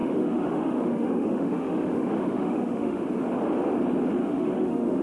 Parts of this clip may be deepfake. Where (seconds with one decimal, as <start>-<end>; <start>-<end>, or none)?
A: 0.0-3.0; 4.2-5.0